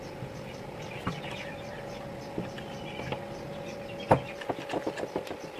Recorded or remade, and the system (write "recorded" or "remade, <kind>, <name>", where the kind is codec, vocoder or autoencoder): recorded